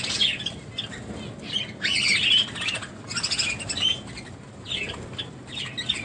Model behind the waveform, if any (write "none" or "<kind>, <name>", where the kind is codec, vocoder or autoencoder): none